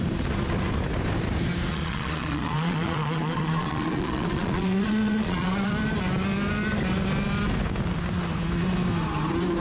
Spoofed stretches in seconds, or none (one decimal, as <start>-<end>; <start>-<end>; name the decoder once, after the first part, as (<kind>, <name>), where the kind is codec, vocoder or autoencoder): 1.7-5.7 (vocoder, Vocos)